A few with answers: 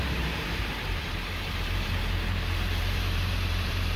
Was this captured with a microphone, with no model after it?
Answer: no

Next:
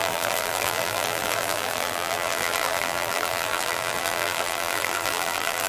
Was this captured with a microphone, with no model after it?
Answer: no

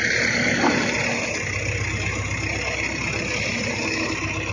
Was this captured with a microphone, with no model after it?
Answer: yes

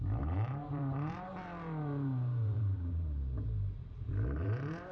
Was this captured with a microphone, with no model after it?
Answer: no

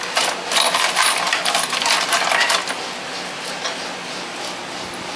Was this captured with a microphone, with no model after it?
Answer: yes